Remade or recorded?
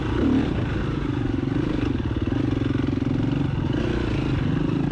recorded